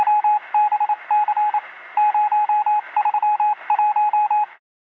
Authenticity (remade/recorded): recorded